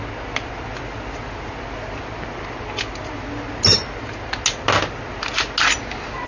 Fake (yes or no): no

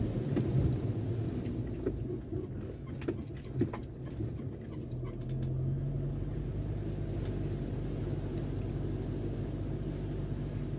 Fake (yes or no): no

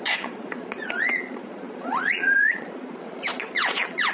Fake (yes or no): yes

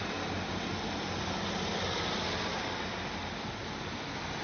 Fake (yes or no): no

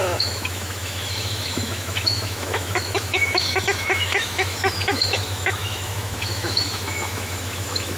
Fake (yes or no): yes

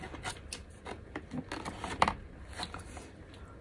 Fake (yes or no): no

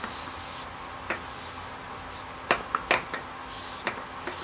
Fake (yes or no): no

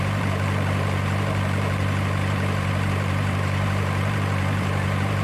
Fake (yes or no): yes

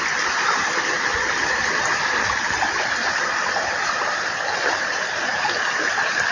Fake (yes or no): no